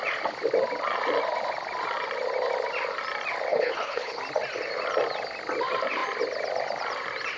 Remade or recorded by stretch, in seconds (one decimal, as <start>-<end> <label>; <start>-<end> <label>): 0.0-3.5 recorded; 3.5-4.2 remade; 4.2-7.4 recorded